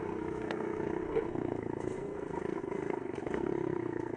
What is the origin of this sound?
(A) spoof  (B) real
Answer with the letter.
A